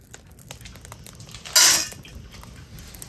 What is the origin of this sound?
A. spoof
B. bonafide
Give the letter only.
B